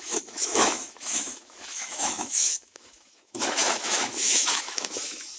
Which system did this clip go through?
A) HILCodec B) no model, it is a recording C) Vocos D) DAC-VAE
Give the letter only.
D